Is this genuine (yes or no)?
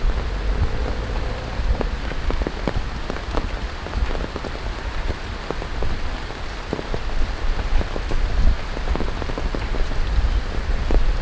yes